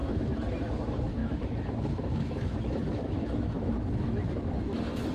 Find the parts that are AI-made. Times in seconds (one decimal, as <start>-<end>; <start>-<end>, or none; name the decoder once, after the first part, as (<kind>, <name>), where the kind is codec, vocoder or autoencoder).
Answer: 0.0-5.1 (autoencoder, DAC-VAE)